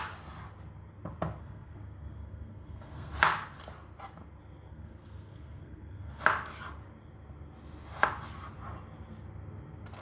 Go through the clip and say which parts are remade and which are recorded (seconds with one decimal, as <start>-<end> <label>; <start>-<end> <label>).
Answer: 0.0-1.4 recorded; 1.4-3.1 remade; 3.1-4.7 recorded; 4.7-6.2 remade; 6.2-10.0 recorded